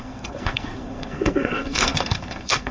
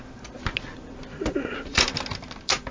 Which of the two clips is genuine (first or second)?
second